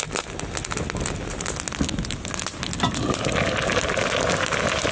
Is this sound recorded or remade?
recorded